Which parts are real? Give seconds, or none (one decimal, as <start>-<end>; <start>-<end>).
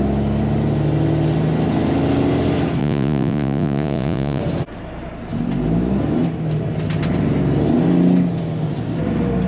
0.0-2.8; 4.4-9.5